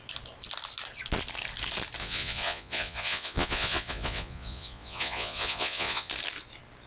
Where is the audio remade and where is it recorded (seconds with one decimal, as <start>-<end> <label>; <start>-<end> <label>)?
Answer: 0.0-2.0 recorded; 2.0-6.1 remade; 6.1-6.9 recorded